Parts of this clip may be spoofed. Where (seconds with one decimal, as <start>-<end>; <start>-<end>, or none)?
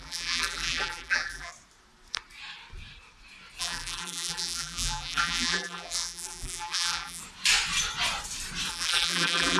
0.0-1.5; 3.6-7.2; 8.7-9.6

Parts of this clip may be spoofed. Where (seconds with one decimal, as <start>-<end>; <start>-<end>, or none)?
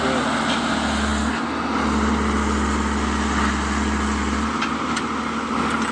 none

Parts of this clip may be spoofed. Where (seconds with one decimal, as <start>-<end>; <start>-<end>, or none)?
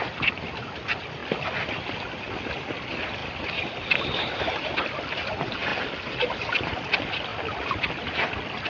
3.2-4.4; 7.3-7.9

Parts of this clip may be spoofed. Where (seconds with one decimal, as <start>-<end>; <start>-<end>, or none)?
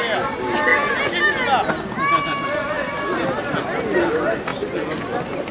0.0-0.7; 4.0-4.5; 5.0-5.5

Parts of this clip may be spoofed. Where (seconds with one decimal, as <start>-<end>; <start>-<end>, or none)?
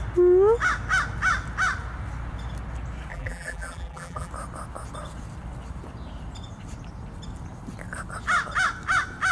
3.1-4.3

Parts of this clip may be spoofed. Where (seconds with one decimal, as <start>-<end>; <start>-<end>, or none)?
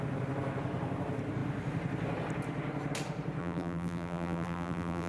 3.4-5.1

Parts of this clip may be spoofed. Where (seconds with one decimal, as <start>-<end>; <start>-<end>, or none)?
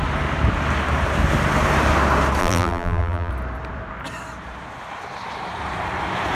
2.4-3.3